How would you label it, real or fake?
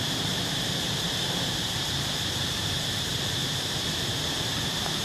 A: fake